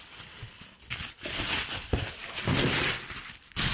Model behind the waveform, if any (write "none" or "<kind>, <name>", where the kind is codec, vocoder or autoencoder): none